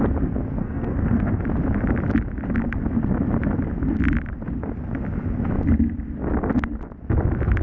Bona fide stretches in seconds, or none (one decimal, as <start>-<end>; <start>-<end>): 0.0-0.6; 1.4-7.6